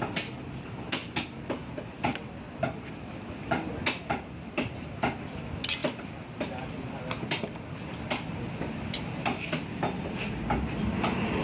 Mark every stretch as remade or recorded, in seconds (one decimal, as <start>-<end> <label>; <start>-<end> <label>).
0.0-1.6 recorded; 1.6-3.7 remade; 3.7-5.8 recorded; 5.8-6.7 remade; 6.7-11.4 recorded